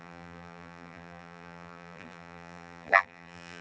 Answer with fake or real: fake